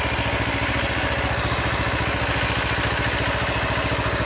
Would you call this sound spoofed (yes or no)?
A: no